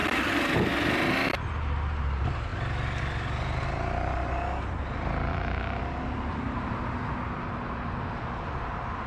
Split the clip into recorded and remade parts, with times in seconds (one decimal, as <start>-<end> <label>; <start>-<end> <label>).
0.0-5.3 recorded; 5.3-5.8 remade; 5.8-9.1 recorded